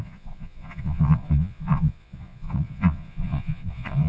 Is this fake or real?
fake